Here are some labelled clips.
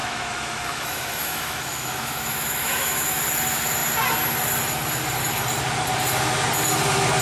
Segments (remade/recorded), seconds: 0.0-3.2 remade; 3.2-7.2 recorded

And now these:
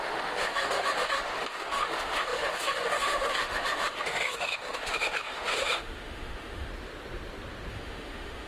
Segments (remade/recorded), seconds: 0.0-6.7 remade; 6.7-7.7 recorded; 7.7-8.5 remade